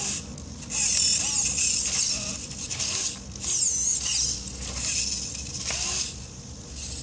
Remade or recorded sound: recorded